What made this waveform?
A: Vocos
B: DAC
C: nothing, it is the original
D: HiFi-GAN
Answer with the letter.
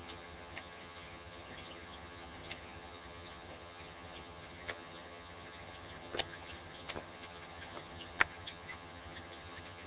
D